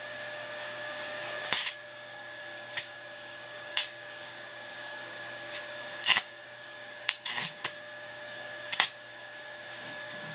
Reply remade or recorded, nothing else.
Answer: remade